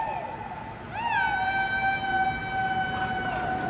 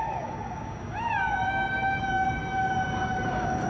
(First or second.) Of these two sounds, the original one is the first